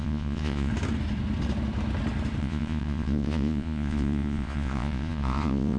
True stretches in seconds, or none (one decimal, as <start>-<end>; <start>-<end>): 0.7-2.4